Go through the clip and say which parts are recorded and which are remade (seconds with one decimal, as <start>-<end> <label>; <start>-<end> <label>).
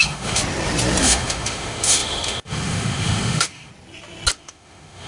0.0-0.4 remade; 0.4-1.0 recorded; 1.0-3.7 remade; 3.7-4.3 recorded; 4.3-5.1 remade